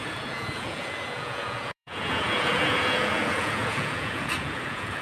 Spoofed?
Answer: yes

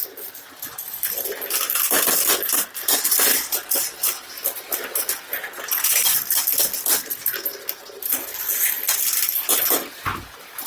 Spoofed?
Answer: no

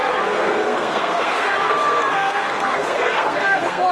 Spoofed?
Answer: yes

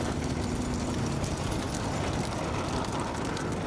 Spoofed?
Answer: no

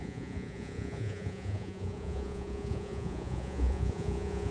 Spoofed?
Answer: yes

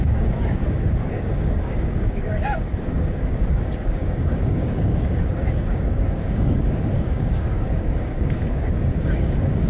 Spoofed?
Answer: yes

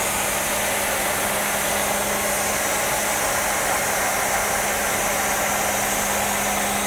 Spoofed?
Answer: no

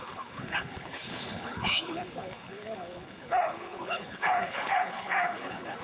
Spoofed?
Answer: yes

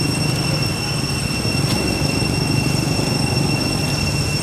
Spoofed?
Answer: no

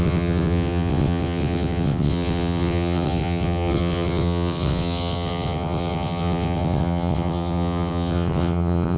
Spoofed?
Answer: yes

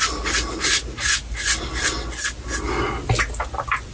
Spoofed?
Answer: no